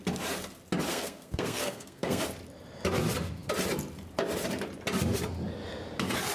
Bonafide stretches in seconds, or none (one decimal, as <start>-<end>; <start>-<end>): 0.0-0.9; 2.2-6.3